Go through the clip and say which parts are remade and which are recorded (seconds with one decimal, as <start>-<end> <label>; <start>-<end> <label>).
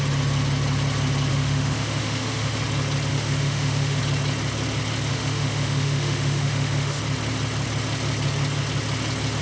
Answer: 0.0-1.3 recorded; 1.3-2.6 remade; 2.6-3.1 recorded; 3.1-4.0 remade; 4.0-5.1 recorded; 5.1-7.0 remade; 7.0-9.4 recorded